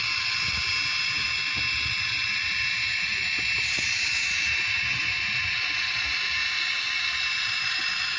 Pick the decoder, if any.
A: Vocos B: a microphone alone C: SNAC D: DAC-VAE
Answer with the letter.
B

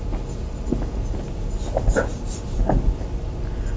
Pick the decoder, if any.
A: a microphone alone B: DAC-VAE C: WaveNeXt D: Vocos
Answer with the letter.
A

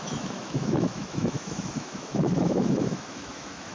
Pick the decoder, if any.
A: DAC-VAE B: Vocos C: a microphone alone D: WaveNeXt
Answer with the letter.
A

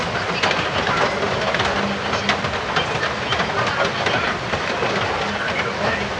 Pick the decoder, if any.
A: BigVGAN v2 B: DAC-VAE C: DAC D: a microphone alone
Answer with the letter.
D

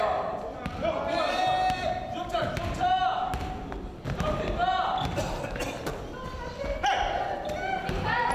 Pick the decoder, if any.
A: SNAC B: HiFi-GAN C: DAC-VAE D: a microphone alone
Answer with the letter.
D